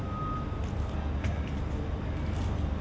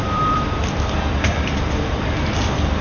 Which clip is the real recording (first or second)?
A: first